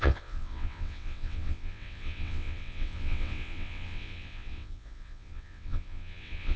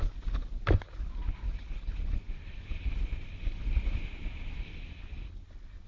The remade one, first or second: first